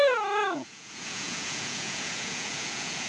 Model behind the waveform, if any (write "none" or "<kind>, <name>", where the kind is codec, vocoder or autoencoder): vocoder, Vocos